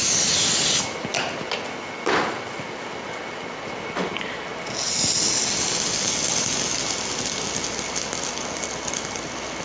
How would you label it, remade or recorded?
recorded